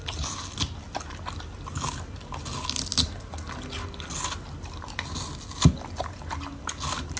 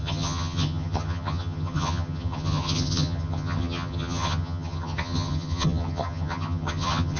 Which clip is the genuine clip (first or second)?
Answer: first